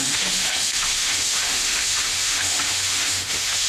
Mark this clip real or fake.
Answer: fake